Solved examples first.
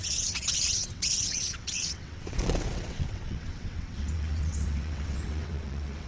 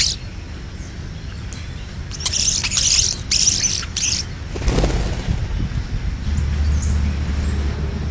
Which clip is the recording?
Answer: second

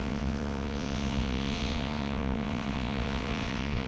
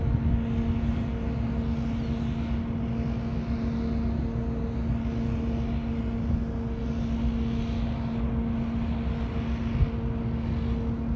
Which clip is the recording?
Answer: second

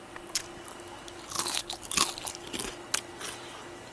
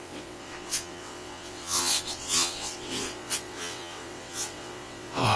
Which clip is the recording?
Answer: first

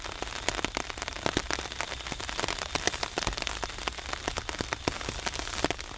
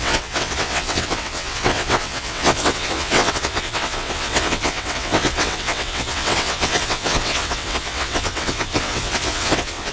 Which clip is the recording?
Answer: first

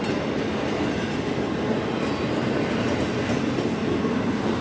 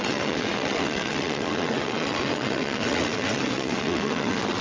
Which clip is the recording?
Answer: first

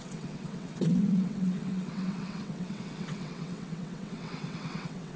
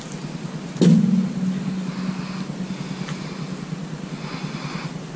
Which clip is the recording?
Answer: second